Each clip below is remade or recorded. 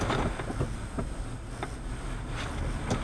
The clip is recorded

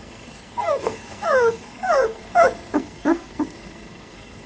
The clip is remade